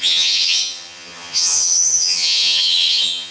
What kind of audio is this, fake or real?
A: fake